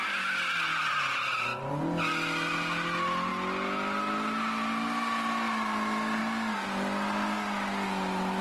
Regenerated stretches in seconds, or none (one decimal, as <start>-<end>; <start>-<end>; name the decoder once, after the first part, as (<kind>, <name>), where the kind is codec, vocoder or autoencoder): 0.7-1.7 (vocoder, BigVGAN v2)